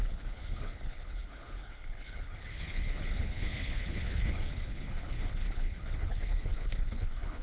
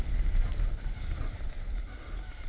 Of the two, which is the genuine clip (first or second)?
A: second